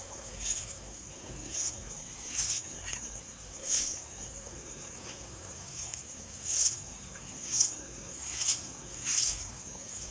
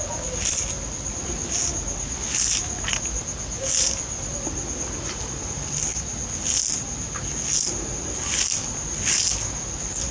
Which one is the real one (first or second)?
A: second